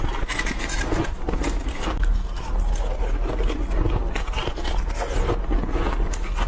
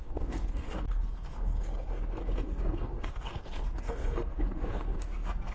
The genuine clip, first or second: first